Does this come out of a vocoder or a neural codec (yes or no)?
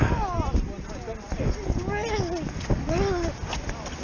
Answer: no